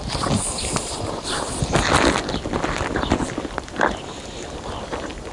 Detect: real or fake real